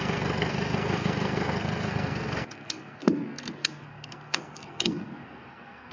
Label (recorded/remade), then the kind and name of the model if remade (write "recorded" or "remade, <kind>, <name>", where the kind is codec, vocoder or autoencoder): remade, codec, SNAC